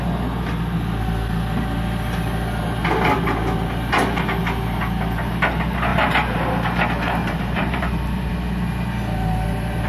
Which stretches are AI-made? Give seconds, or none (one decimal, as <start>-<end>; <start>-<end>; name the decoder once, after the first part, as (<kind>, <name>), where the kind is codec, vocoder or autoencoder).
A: 5.9-6.5 (vocoder, BigVGAN v2); 7.2-8.3